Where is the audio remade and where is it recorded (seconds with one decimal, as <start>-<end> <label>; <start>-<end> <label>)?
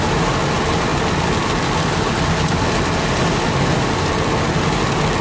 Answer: 0.0-5.2 recorded